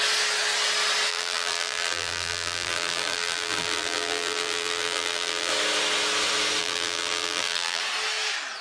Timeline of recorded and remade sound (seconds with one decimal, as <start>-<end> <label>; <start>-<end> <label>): 0.0-1.1 recorded; 1.1-5.5 remade; 5.5-6.6 recorded; 6.6-7.8 remade; 7.8-8.6 recorded